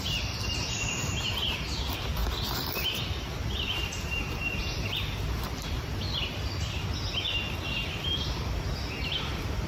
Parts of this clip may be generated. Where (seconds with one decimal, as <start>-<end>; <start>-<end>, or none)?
none